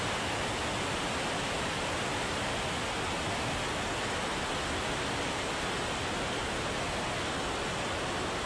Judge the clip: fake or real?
real